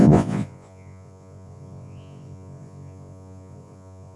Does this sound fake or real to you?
fake